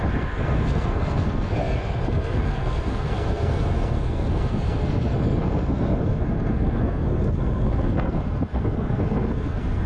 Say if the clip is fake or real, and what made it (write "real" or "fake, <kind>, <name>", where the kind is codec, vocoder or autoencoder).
fake, codec, SNAC